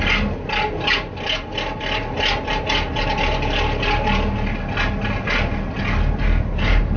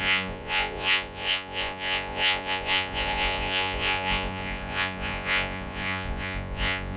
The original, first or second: first